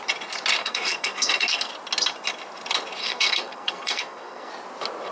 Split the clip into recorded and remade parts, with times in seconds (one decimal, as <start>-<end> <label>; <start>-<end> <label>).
0.0-0.6 recorded; 0.6-1.7 remade; 1.7-3.0 recorded; 3.0-4.5 remade; 4.5-5.1 recorded